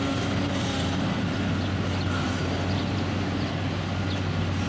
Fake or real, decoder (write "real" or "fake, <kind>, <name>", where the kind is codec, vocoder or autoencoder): real